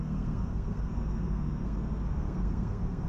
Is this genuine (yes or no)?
no